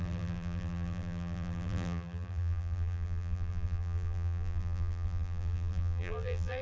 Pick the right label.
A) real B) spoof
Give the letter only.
B